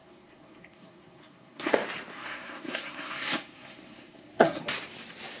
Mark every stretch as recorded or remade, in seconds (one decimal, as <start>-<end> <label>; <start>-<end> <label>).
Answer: 0.0-1.7 remade; 1.7-2.1 recorded; 2.1-4.6 remade; 4.6-5.4 recorded